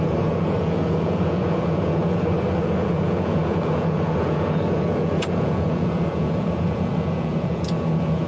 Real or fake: fake